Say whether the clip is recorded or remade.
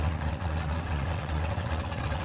remade